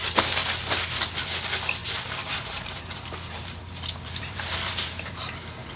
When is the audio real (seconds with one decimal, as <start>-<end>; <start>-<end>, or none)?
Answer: 0.0-1.8; 5.3-5.8